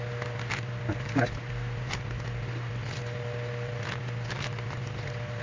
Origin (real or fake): real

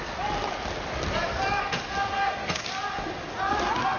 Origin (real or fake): real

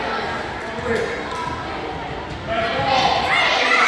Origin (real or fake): real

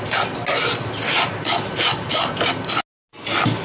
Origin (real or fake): real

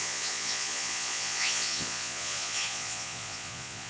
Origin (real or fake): fake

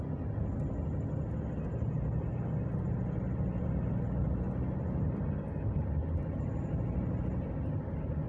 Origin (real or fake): real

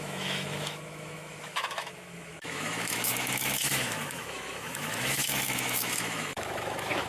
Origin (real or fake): fake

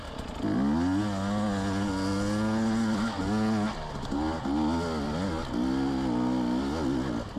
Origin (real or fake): real